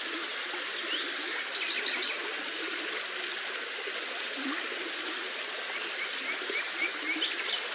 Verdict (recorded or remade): recorded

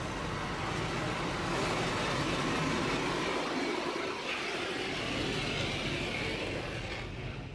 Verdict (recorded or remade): recorded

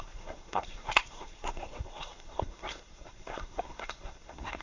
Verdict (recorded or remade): remade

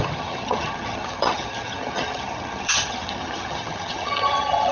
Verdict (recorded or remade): remade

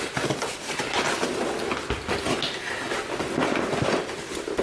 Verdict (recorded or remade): recorded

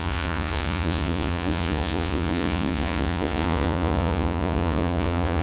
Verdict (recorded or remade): remade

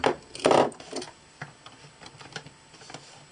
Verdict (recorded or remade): remade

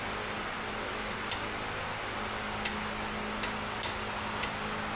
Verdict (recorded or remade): recorded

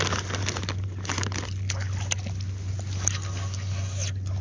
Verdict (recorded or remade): recorded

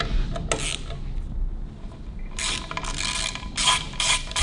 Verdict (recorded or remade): recorded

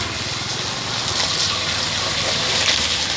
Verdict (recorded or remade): recorded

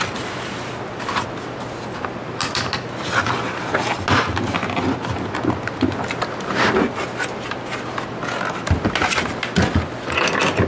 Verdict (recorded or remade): recorded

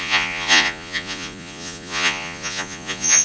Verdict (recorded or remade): remade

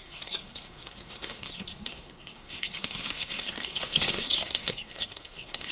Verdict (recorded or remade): remade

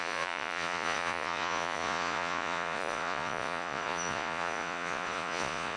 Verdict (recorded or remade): remade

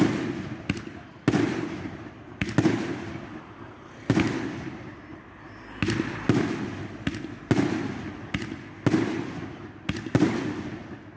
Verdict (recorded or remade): recorded